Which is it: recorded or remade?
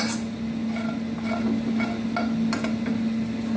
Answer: recorded